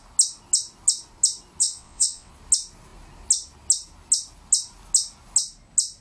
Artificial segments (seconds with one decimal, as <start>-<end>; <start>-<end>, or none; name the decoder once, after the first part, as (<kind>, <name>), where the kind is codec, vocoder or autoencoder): 1.6-2.3 (vocoder, WaveNeXt)